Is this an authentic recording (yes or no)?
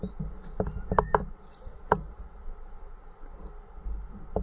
yes